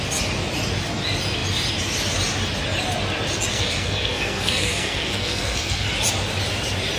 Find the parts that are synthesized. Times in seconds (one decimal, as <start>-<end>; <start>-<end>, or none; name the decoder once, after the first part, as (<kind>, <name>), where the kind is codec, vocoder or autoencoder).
3.5-5.9 (codec, SNAC)